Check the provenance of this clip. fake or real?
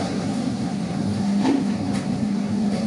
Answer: fake